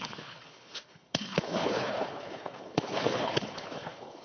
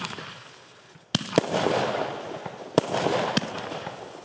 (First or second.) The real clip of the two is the second